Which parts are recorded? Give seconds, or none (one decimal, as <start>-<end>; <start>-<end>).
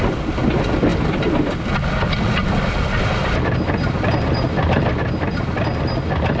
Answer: 0.0-3.2; 5.5-6.4